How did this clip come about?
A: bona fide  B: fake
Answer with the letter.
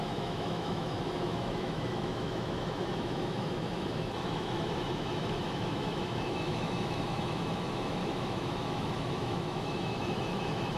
B